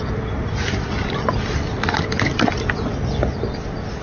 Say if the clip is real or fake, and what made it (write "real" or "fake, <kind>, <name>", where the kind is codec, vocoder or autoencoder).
real